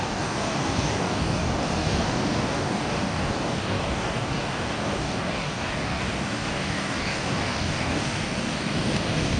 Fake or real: fake